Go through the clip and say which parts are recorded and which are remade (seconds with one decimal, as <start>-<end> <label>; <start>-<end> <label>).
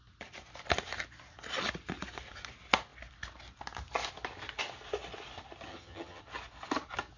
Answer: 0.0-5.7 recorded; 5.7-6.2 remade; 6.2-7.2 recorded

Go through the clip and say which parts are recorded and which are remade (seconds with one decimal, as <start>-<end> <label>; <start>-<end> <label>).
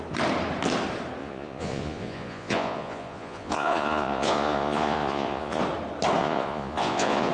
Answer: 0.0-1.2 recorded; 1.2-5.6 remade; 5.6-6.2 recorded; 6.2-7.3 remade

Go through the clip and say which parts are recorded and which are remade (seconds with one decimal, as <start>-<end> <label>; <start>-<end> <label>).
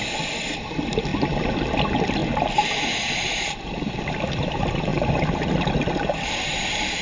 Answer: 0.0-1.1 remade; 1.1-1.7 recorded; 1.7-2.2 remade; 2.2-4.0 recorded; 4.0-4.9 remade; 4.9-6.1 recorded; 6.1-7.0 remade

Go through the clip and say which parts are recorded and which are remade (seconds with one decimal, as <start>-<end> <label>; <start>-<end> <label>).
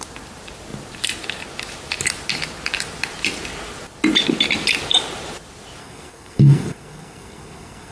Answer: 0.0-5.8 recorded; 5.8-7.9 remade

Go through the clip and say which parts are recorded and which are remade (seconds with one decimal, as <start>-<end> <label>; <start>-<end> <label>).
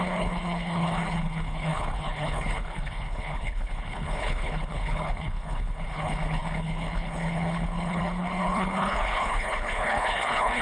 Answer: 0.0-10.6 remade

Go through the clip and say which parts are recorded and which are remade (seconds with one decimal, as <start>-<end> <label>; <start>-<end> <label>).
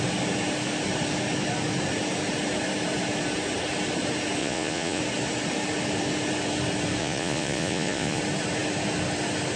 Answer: 0.0-4.4 recorded; 4.4-5.0 remade; 5.0-7.0 recorded; 7.0-8.2 remade; 8.2-9.6 recorded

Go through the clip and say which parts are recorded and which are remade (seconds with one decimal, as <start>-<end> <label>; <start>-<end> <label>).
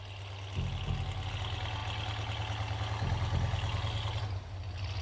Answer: 0.0-5.0 recorded